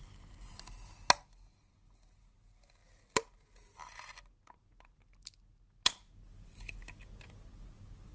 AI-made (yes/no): no